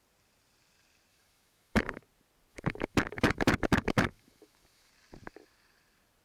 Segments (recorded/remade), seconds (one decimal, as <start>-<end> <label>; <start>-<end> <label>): 0.0-1.1 recorded; 1.1-2.0 remade; 2.0-2.5 recorded; 2.5-4.9 remade; 4.9-6.2 recorded